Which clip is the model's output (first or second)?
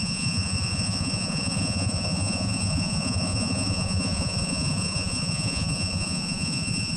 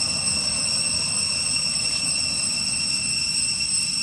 first